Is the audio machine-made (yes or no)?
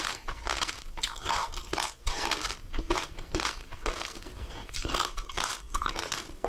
yes